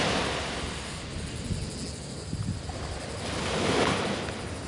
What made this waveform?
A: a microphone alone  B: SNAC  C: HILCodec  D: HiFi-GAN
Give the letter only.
A